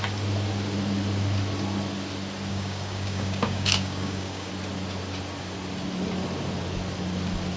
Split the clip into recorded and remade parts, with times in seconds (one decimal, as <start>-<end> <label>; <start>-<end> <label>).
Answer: 0.0-2.5 recorded; 2.5-4.5 remade; 4.5-7.6 recorded